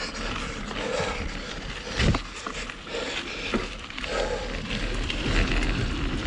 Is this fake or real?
real